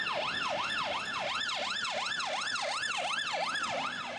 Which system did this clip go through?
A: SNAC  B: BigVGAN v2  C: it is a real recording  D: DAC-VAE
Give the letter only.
C